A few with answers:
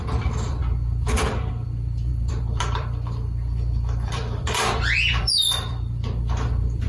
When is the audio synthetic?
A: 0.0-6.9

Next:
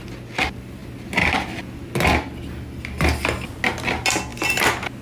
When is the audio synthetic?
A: none